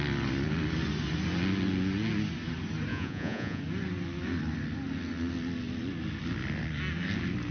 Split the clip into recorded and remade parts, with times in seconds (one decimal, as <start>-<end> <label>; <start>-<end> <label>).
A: 0.0-2.9 recorded; 2.9-3.6 remade; 3.6-7.5 recorded